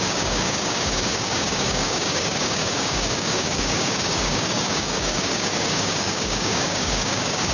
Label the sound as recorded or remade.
remade